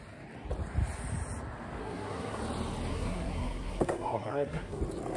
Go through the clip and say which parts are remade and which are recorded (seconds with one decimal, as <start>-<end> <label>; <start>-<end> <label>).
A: 0.0-1.8 recorded; 1.8-2.4 remade; 2.4-2.9 recorded; 2.9-4.8 remade; 4.8-5.2 recorded